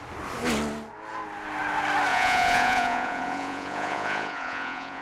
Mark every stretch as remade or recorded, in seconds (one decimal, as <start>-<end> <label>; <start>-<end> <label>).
0.0-2.1 recorded; 2.1-5.0 remade